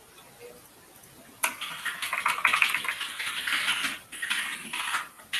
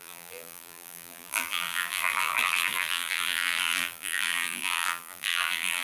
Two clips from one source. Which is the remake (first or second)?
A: second